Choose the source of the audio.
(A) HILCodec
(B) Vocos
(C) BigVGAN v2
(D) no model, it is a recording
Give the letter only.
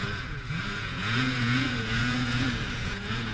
B